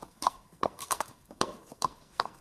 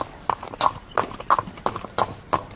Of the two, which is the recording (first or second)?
second